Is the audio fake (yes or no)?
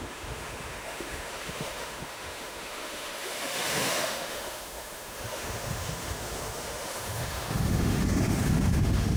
yes